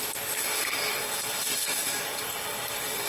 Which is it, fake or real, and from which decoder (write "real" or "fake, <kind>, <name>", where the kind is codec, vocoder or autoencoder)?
fake, codec, DAC